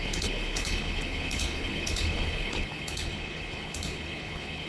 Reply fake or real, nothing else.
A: fake